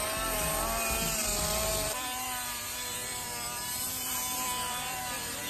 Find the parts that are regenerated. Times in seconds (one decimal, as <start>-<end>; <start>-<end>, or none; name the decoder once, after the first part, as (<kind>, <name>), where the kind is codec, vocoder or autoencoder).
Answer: 1.7-5.0 (vocoder, BigVGAN v2)